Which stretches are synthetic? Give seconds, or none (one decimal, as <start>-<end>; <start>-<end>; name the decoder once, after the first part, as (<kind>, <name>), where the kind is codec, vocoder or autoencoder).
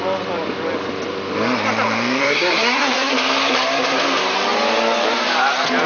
2.2-3.1 (codec, SNAC)